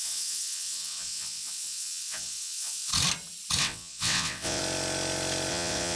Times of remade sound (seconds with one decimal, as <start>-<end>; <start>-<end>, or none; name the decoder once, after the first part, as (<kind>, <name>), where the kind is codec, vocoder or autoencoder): 0.0-2.9 (vocoder, WaveNeXt); 3.6-4.6; 5.5-6.0